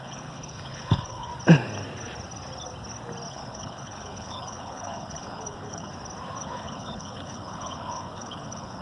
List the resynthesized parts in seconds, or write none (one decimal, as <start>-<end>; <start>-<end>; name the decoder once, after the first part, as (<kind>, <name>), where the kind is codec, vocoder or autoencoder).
0.0-1.3 (codec, HILCodec); 3.3-5.9; 6.4-8.8